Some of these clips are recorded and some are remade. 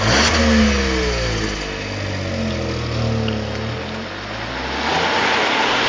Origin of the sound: recorded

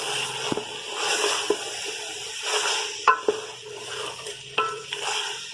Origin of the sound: recorded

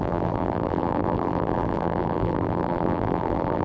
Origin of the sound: remade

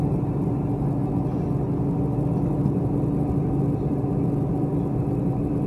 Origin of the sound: recorded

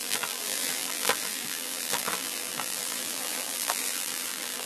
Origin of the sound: remade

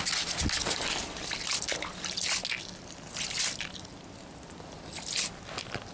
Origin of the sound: recorded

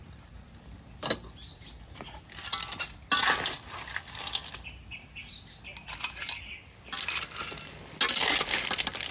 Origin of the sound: recorded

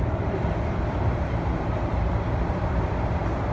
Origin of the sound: remade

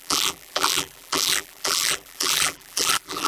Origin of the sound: remade